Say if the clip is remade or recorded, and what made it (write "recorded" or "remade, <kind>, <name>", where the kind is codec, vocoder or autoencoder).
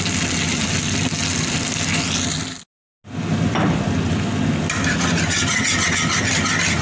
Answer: recorded